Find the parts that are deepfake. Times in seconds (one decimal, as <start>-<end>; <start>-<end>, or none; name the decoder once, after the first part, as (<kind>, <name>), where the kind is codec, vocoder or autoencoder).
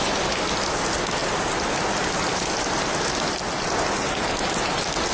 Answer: none